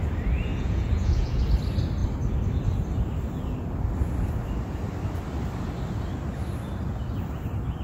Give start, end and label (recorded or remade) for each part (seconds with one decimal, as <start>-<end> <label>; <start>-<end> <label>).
0.0-0.5 recorded; 0.5-1.4 remade; 1.4-7.8 recorded